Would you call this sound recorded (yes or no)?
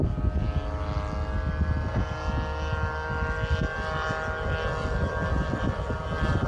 yes